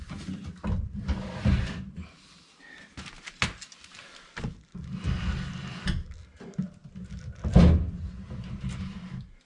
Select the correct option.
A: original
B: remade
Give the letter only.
A